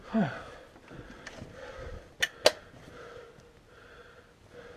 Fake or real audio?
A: real